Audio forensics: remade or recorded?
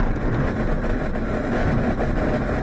recorded